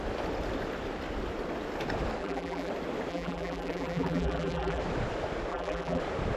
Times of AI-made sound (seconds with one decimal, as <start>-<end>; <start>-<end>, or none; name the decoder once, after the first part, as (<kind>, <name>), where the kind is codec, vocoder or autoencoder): 2.2-2.7 (vocoder, BigVGAN v2); 3.1-4.8; 5.5-6.0

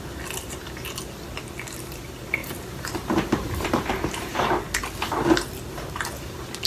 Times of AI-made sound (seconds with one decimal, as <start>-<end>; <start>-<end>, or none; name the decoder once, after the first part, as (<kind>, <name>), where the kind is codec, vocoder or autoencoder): 2.4-4.5 (vocoder, BigVGAN v2)

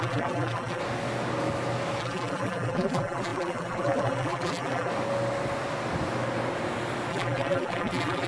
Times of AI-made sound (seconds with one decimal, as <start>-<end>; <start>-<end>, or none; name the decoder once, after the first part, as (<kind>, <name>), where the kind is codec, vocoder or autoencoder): 0.0-0.8 (vocoder, BigVGAN v2); 2.0-4.9; 7.1-8.3

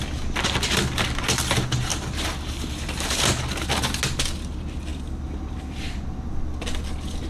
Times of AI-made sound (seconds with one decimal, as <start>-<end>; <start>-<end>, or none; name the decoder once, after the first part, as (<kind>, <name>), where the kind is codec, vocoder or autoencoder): none